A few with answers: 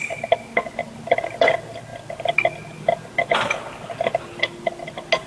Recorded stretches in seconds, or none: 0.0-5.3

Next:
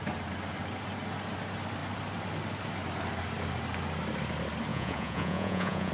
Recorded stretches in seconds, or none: 0.0-4.7

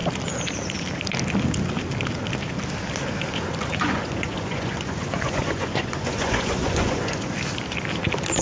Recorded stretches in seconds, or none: 0.0-3.8; 7.3-8.4

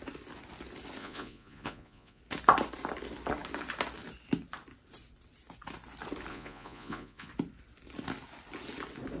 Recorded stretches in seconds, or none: 0.0-1.0; 2.2-6.3; 7.3-9.2

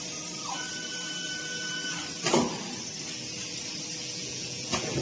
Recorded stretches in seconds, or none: 0.0-4.0

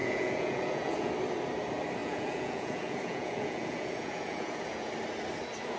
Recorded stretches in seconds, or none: 1.1-2.0; 4.9-5.8

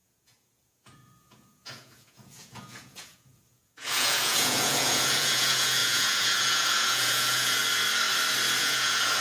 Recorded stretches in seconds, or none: 7.6-8.6